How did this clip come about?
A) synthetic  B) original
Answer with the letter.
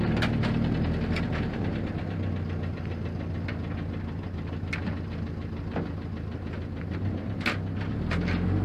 B